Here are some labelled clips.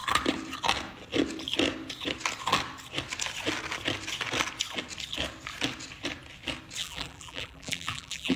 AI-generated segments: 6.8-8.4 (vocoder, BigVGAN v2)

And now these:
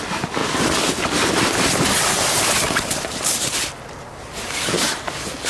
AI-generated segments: none

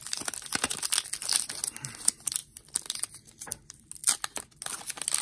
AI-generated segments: none